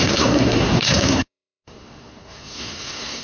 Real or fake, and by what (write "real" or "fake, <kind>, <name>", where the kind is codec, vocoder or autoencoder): fake, codec, SNAC